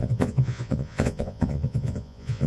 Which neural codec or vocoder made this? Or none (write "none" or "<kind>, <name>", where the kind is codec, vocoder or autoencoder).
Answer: vocoder, Vocos